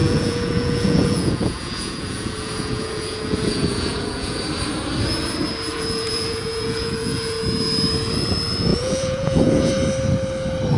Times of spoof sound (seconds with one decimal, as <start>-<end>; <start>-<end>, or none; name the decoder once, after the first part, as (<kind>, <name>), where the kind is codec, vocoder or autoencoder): 0.0-4.4 (vocoder, Vocos); 5.7-7.4; 8.7-9.7